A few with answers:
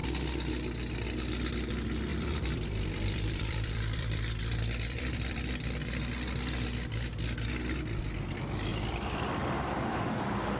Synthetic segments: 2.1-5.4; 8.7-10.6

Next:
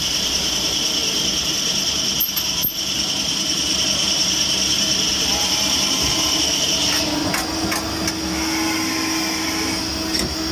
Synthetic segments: 0.0-7.2

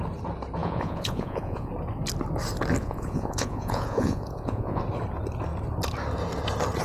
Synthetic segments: 0.6-1.7; 2.8-4.8

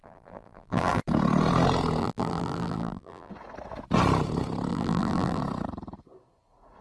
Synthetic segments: 0.0-1.0; 2.0-3.3; 4.7-5.4

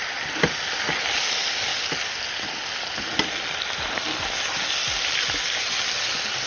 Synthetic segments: none

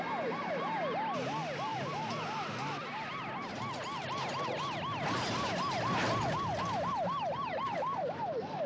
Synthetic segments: none